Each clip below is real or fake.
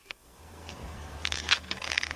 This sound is fake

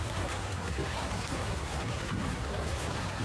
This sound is fake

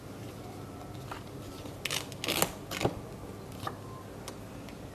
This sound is real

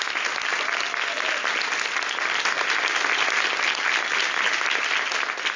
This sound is real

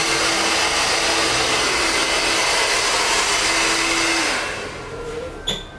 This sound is real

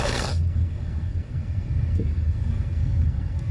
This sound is fake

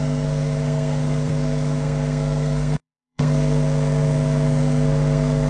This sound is fake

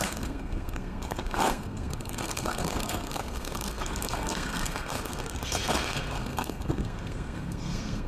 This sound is fake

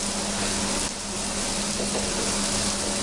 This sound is real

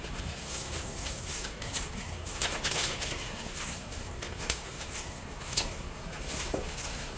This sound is fake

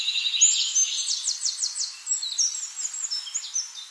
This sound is real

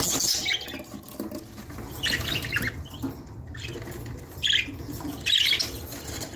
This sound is real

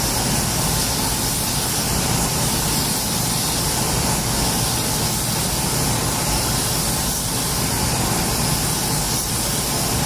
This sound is real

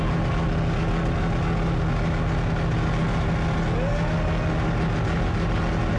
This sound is real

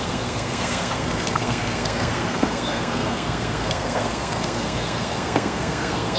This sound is fake